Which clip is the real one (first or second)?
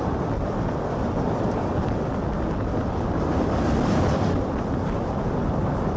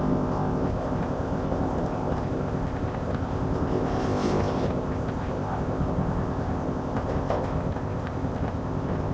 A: first